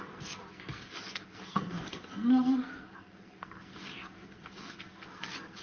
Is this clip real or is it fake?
fake